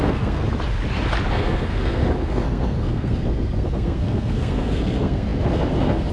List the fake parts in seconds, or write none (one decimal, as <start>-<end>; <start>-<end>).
0.0-0.4; 1.3-6.1